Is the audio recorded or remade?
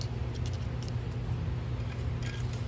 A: recorded